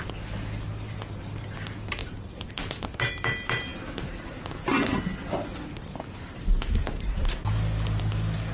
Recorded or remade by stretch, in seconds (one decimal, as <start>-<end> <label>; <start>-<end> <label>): 0.0-2.0 recorded; 2.0-3.1 remade; 3.1-8.5 recorded